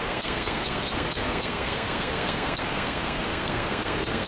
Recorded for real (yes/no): no